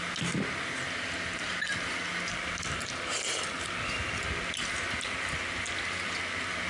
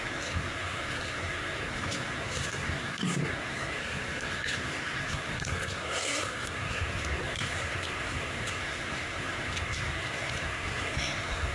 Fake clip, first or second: second